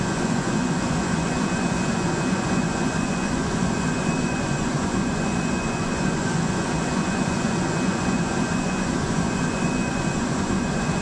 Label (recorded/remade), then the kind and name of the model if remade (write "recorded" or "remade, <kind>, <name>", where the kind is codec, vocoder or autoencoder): remade, vocoder, Vocos